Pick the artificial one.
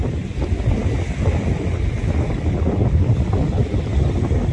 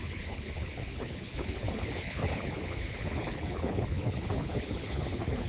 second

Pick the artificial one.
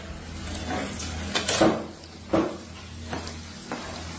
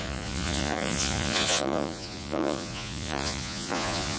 second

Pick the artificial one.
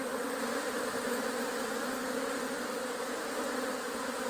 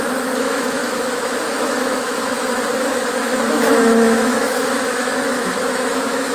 second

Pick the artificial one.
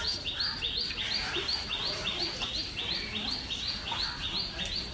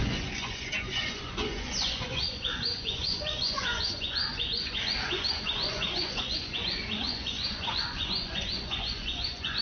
second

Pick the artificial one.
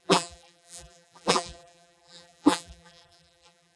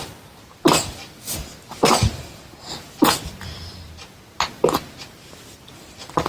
first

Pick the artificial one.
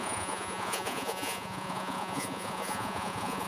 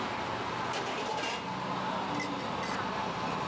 first